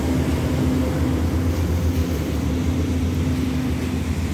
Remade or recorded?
recorded